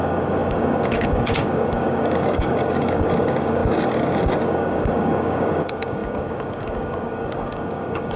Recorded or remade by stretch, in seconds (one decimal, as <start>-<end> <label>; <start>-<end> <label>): 0.0-8.2 remade